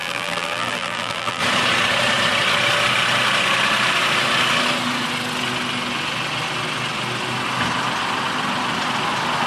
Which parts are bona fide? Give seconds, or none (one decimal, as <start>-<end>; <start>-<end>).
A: 1.4-9.5